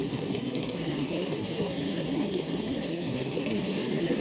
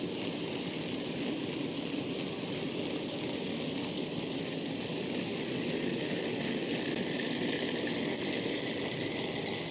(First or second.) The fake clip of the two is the first